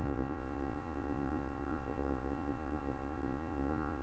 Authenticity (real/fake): fake